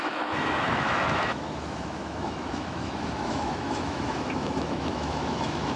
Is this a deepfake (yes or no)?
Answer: yes